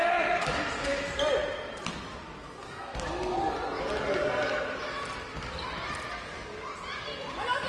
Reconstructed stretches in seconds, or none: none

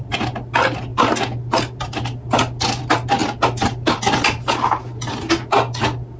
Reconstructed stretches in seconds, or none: none

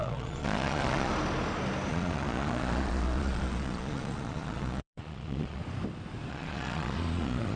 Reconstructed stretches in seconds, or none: 0.0-1.1 (vocoder, Vocos); 1.9-5.6; 6.3-7.6

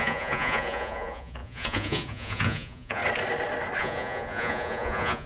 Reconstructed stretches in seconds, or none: 0.0-3.0 (vocoder, Vocos); 3.8-5.3

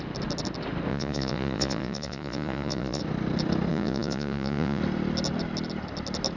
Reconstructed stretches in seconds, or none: 0.9-3.0 (vocoder, Vocos); 3.7-4.8

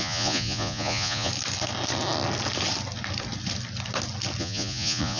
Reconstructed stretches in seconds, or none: 0.0-1.3 (vocoder, Vocos); 4.4-5.2

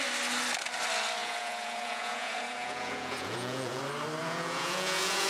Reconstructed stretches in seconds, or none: 1.2-3.8 (vocoder, Vocos); 4.2-5.3

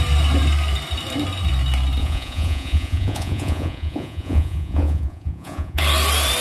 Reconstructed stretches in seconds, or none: 2.0-5.8 (vocoder, Vocos)